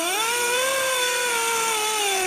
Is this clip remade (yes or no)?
yes